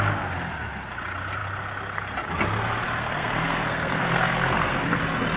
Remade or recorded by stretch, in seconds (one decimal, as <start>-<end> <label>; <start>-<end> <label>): 0.0-3.0 recorded; 3.0-5.0 remade; 5.0-5.4 recorded